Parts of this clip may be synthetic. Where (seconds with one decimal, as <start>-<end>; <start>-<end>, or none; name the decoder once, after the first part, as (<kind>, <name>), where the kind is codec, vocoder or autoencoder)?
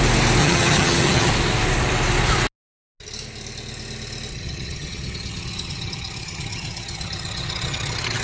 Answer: 0.4-1.3 (vocoder, HiFi-GAN); 4.3-8.2